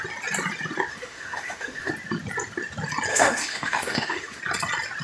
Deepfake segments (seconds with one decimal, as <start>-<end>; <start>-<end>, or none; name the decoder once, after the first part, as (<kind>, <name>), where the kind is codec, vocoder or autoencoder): 0.9-1.9 (autoencoder, DAC-VAE); 3.1-4.4